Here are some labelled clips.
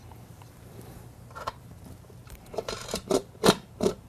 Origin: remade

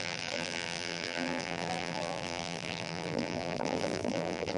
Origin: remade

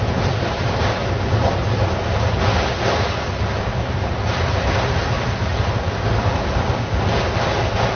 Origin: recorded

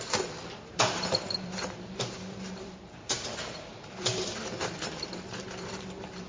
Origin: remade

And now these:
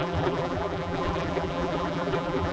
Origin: remade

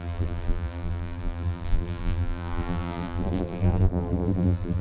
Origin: remade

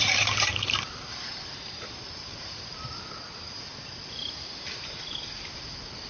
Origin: remade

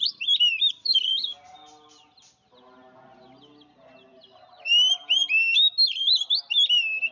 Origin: recorded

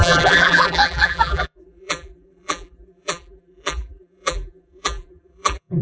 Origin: remade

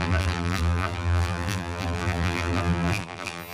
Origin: remade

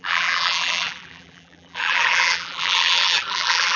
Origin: remade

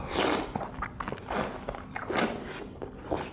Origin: recorded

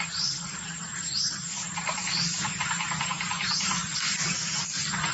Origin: remade